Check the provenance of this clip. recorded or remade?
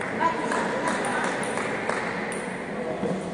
recorded